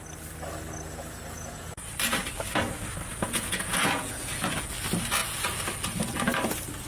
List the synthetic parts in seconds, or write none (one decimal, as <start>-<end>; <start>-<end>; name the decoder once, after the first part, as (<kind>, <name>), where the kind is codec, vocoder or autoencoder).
0.9-1.9 (vocoder, Vocos); 3.1-4.5